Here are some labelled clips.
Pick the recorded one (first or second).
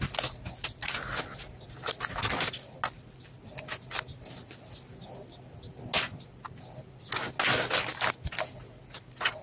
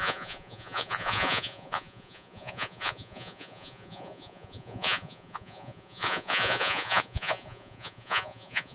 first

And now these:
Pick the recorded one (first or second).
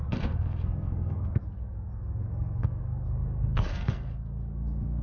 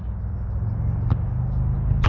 second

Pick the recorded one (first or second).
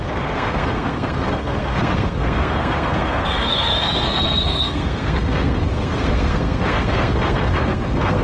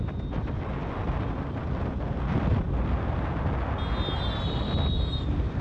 second